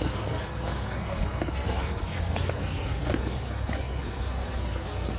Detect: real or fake fake